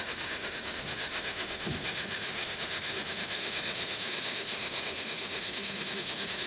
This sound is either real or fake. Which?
fake